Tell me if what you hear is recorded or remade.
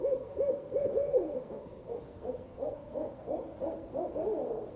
remade